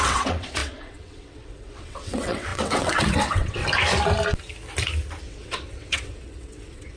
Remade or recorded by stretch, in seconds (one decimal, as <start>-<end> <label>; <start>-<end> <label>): 0.0-3.6 remade; 3.6-5.2 recorded; 5.2-7.0 remade